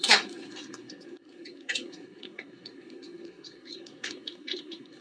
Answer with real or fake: fake